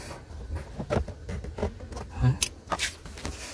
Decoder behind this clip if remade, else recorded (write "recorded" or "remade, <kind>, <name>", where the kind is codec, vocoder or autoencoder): recorded